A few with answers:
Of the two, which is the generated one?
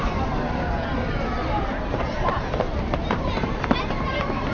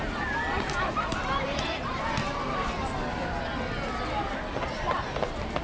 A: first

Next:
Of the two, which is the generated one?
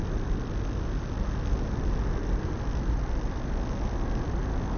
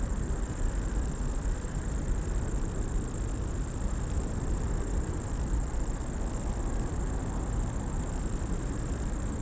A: second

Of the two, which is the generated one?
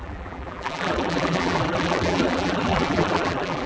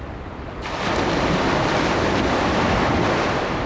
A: first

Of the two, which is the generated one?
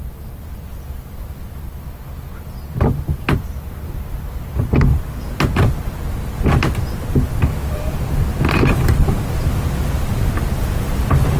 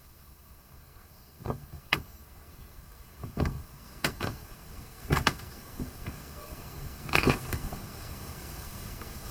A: second